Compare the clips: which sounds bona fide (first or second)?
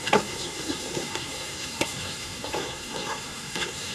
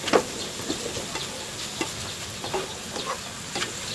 second